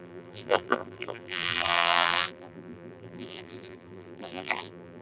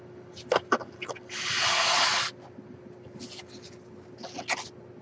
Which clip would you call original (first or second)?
second